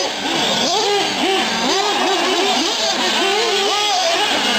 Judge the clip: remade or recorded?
recorded